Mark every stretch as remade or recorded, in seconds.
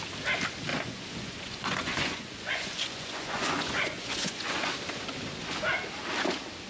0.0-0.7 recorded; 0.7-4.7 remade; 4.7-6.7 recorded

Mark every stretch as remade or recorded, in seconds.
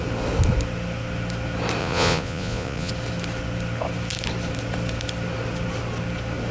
0.0-1.8 recorded; 1.8-2.9 remade; 2.9-6.5 recorded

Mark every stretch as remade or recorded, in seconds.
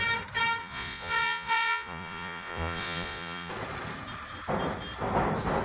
0.0-0.6 recorded; 0.6-3.5 remade; 3.5-5.6 recorded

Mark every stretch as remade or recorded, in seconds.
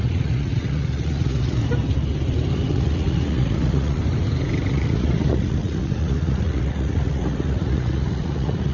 0.0-1.6 remade; 1.6-2.7 recorded; 2.7-4.0 remade; 4.0-4.7 recorded; 4.7-8.7 remade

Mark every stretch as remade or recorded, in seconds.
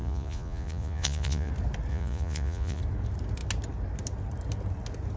0.0-1.5 remade; 1.5-1.9 recorded; 1.9-2.8 remade; 2.8-5.2 recorded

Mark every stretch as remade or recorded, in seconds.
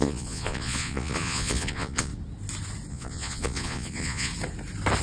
0.0-2.1 remade; 2.1-2.9 recorded; 2.9-4.3 remade; 4.3-5.0 recorded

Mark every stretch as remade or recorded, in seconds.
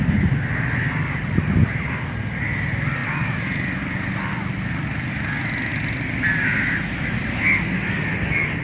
0.0-8.6 recorded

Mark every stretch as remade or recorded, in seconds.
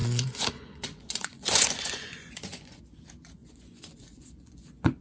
0.0-2.8 remade; 2.8-3.4 recorded; 3.4-5.0 remade